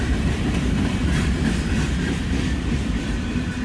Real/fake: real